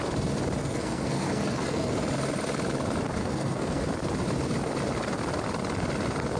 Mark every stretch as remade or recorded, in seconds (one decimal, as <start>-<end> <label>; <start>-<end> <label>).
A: 0.0-0.6 recorded; 0.6-1.9 remade; 1.9-3.2 recorded; 3.2-3.8 remade; 3.8-6.4 recorded